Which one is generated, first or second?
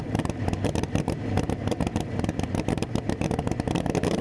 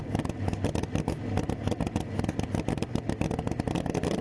first